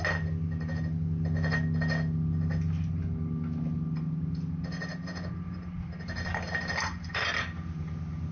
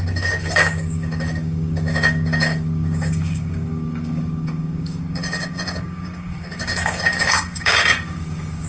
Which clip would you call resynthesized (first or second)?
second